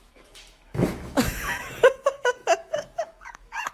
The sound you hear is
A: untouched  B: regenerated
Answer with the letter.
B